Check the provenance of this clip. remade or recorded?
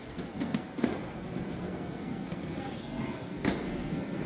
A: remade